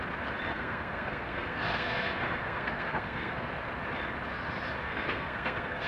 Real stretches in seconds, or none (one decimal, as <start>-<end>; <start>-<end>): 0.0-0.5; 3.5-4.8